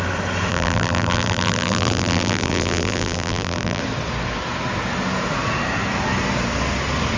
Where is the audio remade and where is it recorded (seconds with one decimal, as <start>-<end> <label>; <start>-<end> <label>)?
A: 0.0-0.5 recorded; 0.5-3.8 remade; 3.8-7.2 recorded